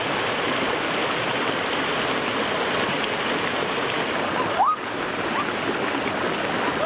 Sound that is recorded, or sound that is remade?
recorded